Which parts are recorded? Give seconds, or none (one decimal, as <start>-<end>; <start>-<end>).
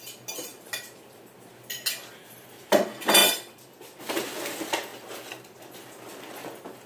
0.0-3.2; 4.0-6.9